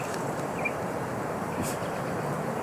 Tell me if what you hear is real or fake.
fake